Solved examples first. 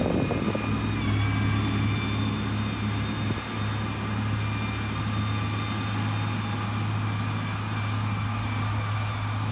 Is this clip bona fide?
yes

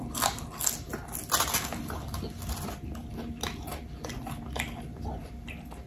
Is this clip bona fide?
yes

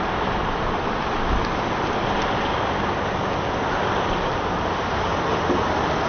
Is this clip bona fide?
yes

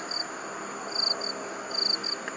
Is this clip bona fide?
yes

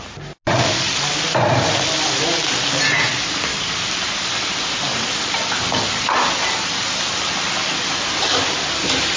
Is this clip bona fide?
yes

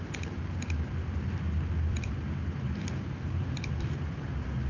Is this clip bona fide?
no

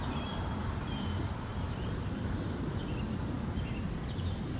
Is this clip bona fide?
no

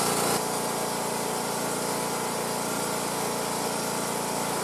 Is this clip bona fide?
yes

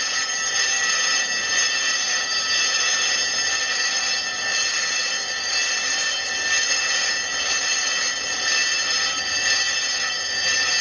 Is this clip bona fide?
yes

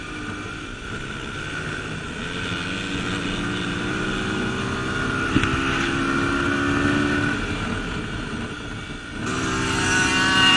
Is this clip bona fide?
yes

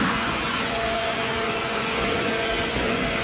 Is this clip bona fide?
no